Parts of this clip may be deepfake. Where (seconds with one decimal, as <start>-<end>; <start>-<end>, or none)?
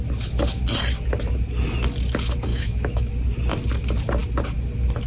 2.5-3.1